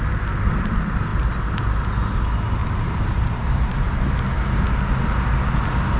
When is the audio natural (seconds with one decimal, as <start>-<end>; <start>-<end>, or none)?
0.0-2.6; 4.1-6.0